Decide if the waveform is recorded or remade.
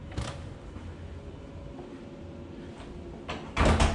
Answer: recorded